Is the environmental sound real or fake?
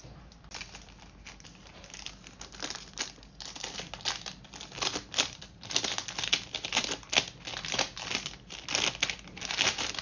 real